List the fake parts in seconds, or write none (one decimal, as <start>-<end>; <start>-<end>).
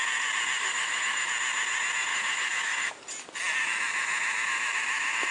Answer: 0.6-1.3; 2.1-3.0